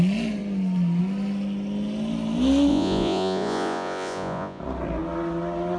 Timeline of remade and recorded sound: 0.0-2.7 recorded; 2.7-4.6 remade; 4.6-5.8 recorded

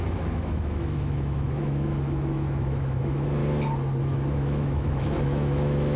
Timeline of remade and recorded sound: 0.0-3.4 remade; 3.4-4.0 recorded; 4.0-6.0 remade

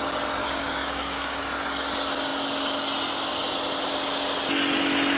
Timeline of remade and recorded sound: 0.0-0.4 recorded; 0.4-1.4 remade; 1.4-5.2 recorded

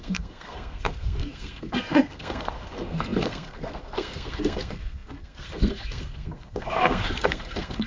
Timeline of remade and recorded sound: 0.0-7.9 remade